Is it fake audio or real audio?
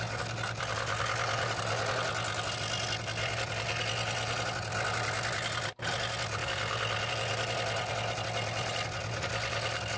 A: real